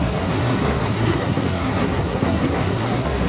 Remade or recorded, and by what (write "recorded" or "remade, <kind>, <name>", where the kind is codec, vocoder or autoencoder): remade, codec, SNAC